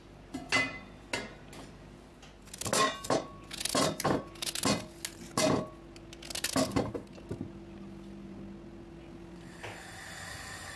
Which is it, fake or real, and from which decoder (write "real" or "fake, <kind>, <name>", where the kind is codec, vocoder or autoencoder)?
real